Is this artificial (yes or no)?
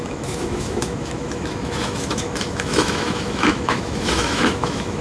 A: yes